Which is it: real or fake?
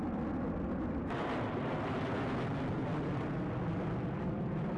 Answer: real